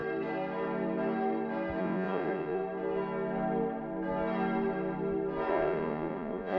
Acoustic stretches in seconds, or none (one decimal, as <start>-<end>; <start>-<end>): 0.0-1.8; 2.6-5.5